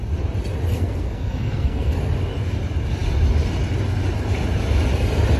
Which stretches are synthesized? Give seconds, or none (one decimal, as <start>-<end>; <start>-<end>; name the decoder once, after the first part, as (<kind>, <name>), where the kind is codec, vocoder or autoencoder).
0.7-2.0 (codec, SNAC)